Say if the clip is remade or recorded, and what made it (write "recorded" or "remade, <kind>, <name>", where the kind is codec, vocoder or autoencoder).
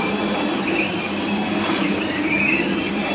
remade, vocoder, BigVGAN v2